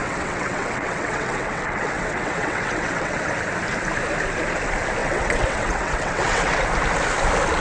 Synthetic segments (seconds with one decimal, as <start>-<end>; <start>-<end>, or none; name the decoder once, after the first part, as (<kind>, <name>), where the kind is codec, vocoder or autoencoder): 0.0-3.3 (vocoder, WaveNeXt); 5.0-6.6